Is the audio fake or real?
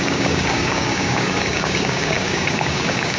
fake